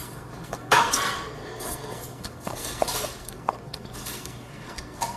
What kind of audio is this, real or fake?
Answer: fake